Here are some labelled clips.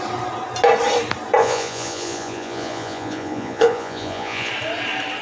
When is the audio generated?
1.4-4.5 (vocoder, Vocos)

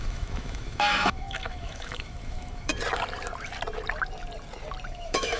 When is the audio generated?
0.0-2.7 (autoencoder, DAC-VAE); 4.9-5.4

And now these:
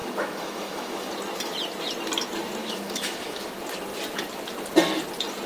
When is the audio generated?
0.0-1.1 (autoencoder, DAC-VAE); 2.6-3.5

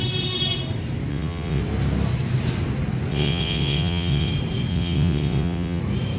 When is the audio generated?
1.1-1.6 (vocoder, WaveNeXt); 3.1-4.3; 4.7-5.8